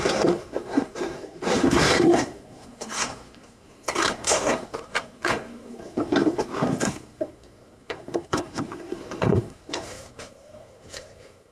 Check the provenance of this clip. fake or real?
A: fake